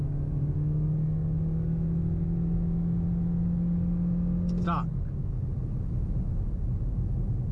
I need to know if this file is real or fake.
real